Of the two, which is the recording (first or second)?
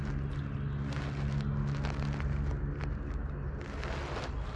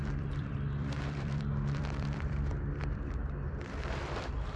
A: first